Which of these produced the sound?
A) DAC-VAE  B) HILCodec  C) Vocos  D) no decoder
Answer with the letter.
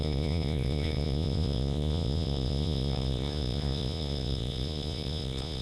C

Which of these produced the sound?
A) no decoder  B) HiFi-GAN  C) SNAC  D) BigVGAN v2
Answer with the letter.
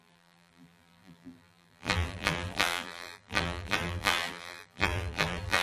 D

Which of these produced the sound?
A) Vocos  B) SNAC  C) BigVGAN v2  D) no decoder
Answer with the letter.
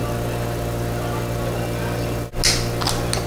D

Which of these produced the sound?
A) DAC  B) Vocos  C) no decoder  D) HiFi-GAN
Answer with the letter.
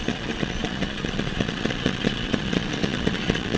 B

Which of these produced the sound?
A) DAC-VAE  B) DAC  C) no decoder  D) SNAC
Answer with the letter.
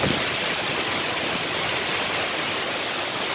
C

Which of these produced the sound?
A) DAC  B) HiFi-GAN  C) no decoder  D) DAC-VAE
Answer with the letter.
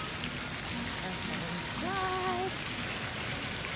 C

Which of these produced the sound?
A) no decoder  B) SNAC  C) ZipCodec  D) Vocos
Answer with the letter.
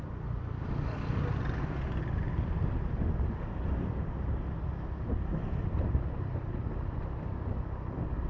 A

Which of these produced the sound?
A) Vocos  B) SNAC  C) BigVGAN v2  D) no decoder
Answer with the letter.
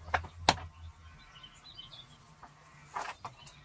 D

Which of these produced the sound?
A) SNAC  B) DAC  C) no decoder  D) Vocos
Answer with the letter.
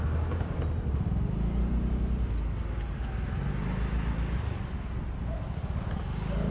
C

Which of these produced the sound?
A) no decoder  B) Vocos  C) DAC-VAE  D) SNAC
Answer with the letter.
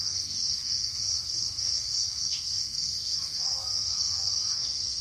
D